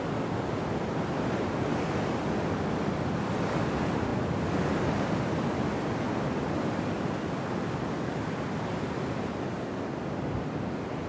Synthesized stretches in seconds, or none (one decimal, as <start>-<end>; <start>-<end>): none